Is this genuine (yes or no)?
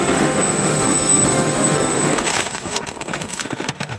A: no